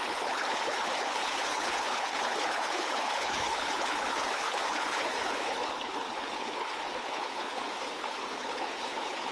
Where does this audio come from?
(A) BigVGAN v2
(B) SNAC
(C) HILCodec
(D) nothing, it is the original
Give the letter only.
C